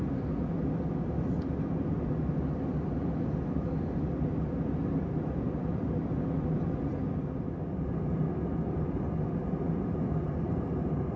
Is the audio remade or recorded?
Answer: recorded